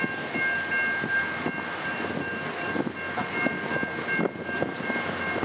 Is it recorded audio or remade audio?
recorded